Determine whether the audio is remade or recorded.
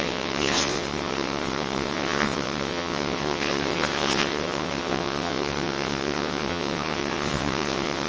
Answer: remade